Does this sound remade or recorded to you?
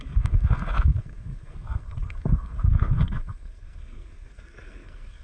remade